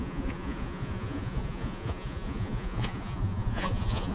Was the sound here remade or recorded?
remade